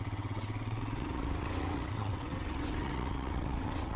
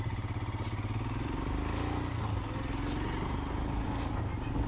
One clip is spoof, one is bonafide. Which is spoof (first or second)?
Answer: first